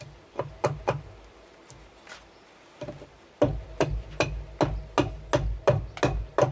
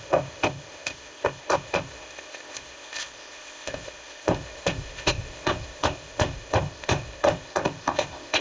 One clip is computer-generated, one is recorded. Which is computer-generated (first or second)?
second